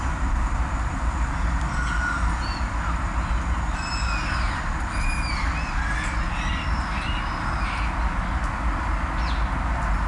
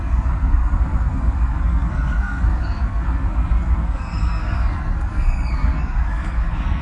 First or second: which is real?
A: first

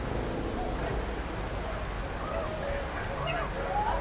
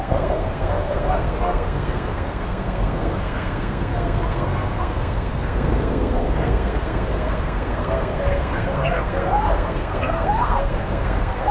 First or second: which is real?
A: first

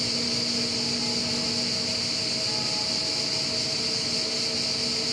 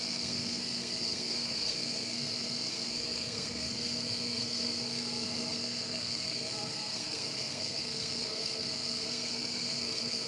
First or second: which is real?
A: first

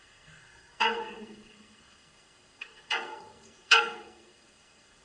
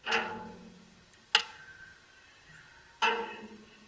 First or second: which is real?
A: second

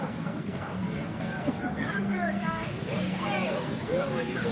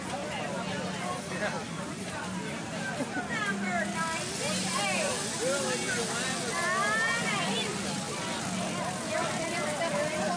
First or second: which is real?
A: second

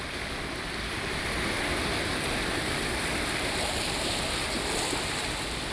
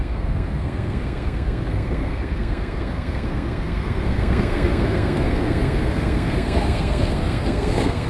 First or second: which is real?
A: first